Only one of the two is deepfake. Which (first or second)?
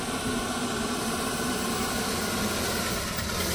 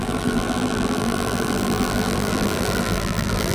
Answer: second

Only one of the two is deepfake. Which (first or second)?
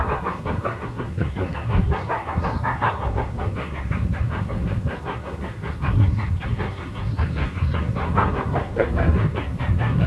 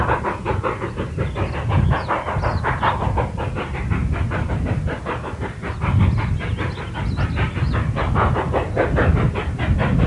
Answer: first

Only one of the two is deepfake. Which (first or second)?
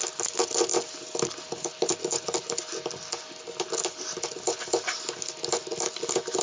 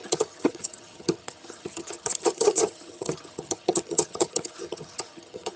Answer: second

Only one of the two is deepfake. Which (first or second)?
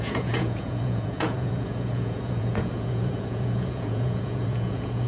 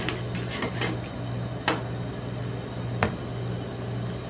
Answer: first